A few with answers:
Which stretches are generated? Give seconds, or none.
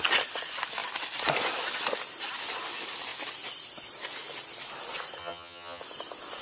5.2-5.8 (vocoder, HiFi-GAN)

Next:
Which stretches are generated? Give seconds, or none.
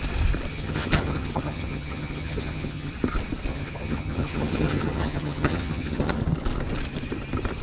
0.5-2.9 (vocoder, HiFi-GAN); 3.5-6.2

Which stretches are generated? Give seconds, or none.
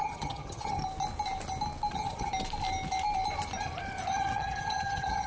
0.0-0.8 (vocoder, HiFi-GAN); 1.9-2.3; 4.1-5.3